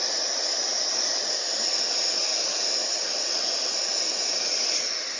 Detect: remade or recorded remade